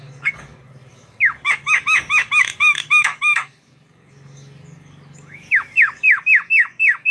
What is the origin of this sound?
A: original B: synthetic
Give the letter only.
B